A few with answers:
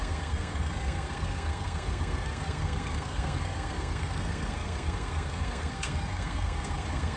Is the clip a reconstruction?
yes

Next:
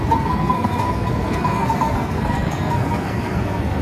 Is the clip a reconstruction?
yes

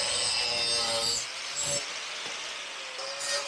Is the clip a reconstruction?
no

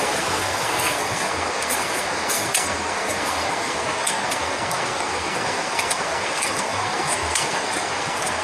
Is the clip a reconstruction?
yes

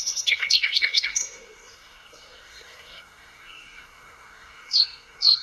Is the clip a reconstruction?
yes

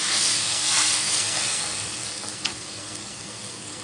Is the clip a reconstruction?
yes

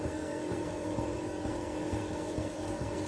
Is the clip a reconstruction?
yes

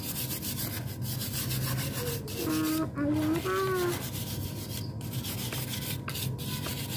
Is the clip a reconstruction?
no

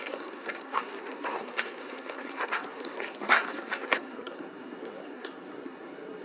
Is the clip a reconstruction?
yes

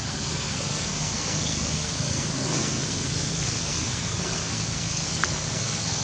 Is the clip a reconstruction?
yes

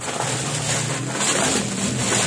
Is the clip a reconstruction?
no